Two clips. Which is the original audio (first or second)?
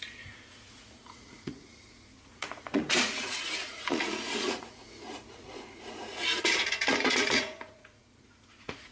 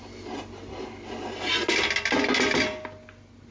second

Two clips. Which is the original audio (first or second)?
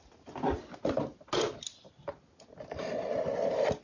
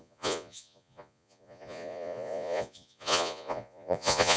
first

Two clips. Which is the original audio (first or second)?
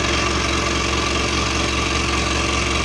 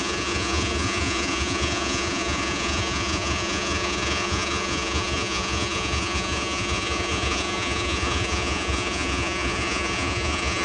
first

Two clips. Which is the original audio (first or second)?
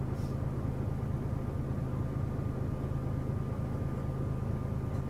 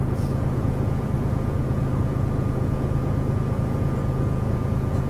first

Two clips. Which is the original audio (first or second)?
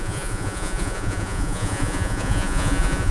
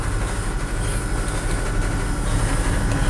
second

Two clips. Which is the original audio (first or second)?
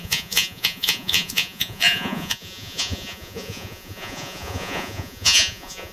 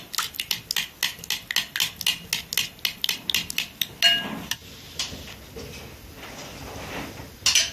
second